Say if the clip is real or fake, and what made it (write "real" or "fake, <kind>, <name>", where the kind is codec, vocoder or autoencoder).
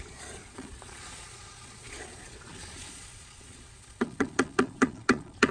fake, vocoder, Vocos